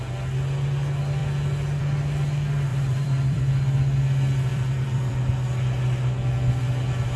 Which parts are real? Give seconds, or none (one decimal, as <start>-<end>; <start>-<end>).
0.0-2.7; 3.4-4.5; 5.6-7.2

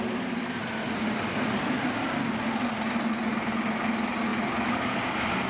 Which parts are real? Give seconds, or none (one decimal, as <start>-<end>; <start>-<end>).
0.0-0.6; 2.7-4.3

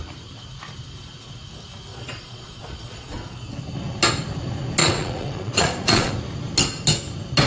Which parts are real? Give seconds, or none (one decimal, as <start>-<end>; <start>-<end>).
0.0-1.9; 3.5-4.8; 6.1-7.5